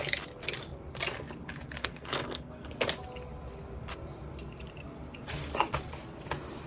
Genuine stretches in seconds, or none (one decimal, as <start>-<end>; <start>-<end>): 0.0-1.8; 2.7-6.7